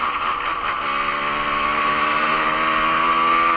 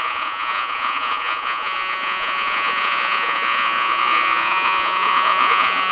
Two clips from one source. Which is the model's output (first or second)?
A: second